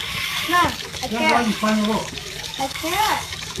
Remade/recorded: remade